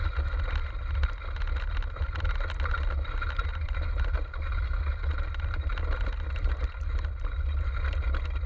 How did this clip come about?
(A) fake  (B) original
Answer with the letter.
B